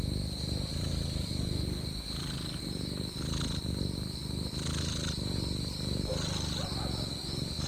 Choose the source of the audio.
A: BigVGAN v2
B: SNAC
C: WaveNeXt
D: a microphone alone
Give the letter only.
D